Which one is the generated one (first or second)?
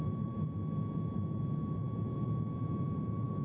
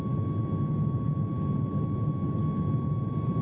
first